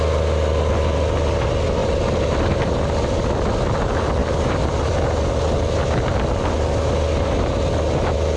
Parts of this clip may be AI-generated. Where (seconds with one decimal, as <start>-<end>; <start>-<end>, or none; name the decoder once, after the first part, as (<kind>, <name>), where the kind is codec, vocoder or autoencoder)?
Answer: 1.8-2.8 (vocoder, BigVGAN v2); 4.2-4.9